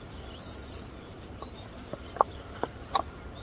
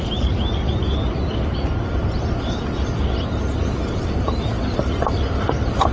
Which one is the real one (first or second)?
second